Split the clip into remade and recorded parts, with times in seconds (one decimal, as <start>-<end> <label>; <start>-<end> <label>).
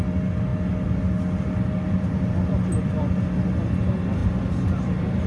0.0-5.3 recorded